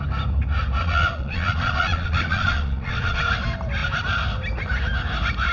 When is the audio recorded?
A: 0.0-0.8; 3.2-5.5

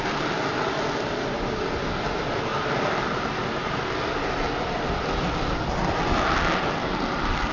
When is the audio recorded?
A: 0.0-7.5

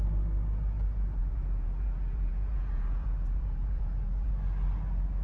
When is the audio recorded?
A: 0.0-1.2; 4.3-5.2